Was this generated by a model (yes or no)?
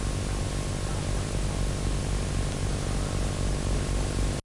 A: no